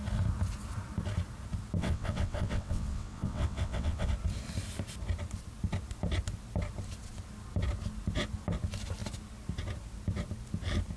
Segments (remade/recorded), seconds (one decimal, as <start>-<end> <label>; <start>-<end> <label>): 0.0-1.8 recorded; 1.8-4.1 remade; 4.1-11.0 recorded